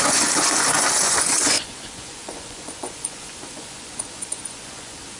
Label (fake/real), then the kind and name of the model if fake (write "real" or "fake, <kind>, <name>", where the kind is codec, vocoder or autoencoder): fake, vocoder, Vocos